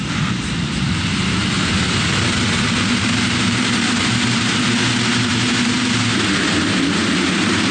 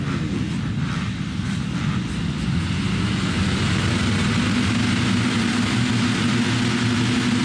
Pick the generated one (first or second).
first